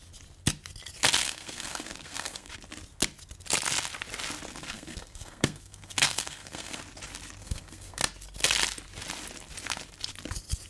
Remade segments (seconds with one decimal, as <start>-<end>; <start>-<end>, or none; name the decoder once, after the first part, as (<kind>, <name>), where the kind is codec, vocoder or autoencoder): 1.2-2.5 (codec, SNAC); 4.5-6.8; 7.4-8.0